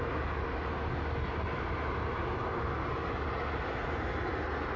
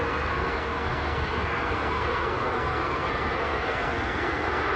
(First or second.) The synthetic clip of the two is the second